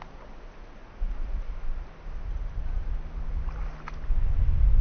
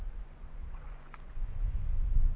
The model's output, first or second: second